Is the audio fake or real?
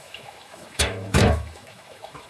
fake